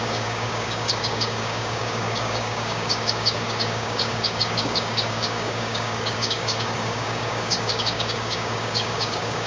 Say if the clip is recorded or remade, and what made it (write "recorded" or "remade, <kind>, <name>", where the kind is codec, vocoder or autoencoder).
remade, codec, DAC